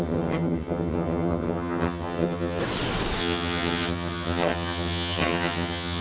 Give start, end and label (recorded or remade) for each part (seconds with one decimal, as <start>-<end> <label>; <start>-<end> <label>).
0.0-2.6 remade; 2.6-3.2 recorded; 3.2-6.0 remade